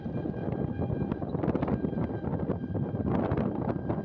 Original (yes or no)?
yes